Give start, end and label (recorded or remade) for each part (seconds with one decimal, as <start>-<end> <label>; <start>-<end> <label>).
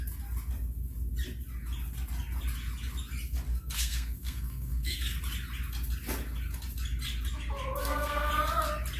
0.0-3.5 recorded; 3.5-5.2 remade; 5.2-7.8 recorded; 7.8-8.3 remade; 8.3-9.0 recorded